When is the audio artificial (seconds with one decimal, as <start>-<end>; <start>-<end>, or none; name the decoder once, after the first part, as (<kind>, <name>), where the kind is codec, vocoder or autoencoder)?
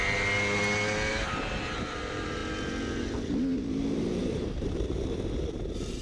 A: 1.1-2.4 (vocoder, BigVGAN v2); 3.7-6.0